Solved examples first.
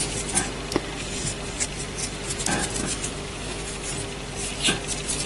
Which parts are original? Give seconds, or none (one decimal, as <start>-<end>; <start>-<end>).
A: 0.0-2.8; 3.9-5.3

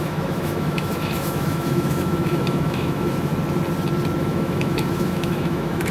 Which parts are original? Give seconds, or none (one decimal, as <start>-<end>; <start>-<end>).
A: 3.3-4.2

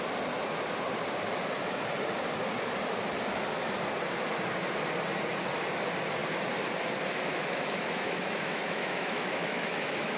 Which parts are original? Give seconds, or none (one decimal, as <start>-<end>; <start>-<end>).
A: 0.0-7.3